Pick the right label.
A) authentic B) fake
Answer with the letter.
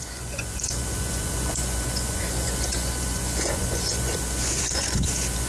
B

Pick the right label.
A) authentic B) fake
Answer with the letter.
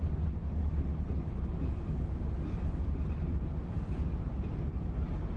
A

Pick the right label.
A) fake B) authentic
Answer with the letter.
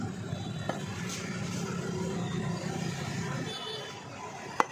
B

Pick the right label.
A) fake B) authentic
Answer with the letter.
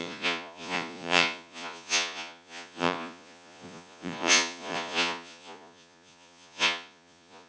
A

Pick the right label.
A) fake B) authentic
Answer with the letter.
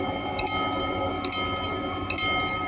B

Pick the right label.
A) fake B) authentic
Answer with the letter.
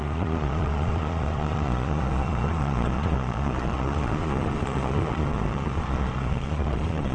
A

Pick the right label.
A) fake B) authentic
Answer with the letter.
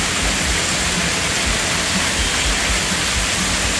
B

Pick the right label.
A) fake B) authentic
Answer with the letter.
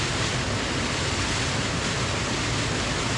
B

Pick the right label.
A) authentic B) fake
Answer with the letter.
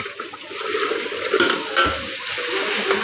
A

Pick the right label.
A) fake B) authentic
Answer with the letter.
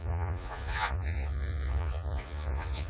A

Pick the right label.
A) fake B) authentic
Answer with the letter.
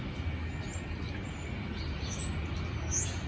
B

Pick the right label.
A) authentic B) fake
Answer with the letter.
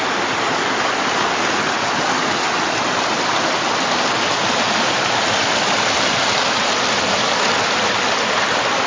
A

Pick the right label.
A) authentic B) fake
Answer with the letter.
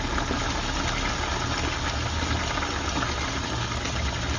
A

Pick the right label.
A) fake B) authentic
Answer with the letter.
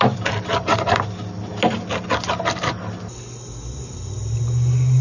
B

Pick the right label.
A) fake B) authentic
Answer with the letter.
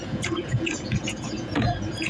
A